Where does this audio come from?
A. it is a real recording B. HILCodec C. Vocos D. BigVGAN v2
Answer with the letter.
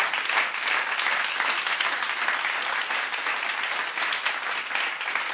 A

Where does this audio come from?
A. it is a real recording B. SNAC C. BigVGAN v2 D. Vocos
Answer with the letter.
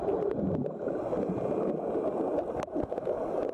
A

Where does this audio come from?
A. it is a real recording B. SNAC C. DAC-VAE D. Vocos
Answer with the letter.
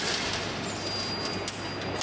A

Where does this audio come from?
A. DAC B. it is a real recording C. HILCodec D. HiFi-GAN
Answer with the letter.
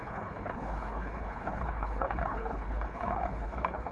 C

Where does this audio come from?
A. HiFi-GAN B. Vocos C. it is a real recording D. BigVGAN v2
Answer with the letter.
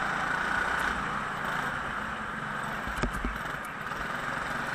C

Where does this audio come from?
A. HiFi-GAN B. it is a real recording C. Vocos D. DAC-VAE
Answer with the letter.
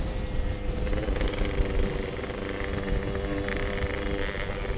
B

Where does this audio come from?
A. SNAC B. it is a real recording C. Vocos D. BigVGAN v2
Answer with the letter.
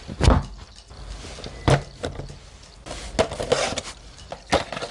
B